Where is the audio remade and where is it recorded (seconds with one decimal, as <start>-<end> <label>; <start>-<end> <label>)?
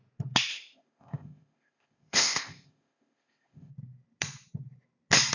0.0-0.5 recorded; 0.5-3.7 remade; 3.7-5.3 recorded